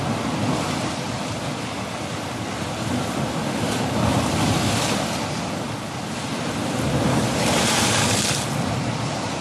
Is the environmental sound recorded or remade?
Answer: recorded